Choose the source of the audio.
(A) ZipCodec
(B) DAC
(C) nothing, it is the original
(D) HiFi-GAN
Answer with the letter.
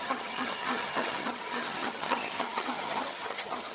D